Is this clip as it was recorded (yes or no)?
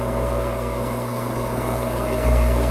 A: no